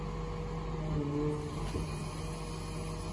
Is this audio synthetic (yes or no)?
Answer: no